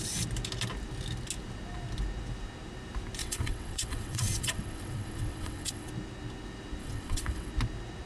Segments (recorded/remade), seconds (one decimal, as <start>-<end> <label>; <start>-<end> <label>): 0.0-3.2 recorded; 3.2-5.9 remade; 5.9-6.8 recorded; 6.8-7.5 remade; 7.5-8.1 recorded